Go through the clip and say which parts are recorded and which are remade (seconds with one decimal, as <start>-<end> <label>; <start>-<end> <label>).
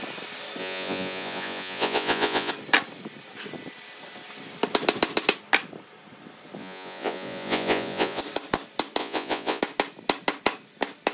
0.0-0.6 recorded; 0.6-2.5 remade; 2.5-6.6 recorded; 6.6-8.2 remade; 8.2-9.0 recorded; 9.0-9.6 remade; 9.6-11.1 recorded